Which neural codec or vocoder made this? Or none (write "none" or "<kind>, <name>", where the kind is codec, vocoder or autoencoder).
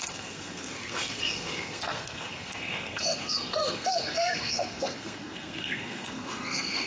codec, SNAC